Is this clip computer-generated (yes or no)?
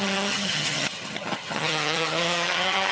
yes